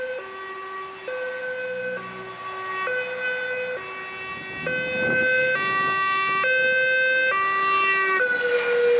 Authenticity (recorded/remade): recorded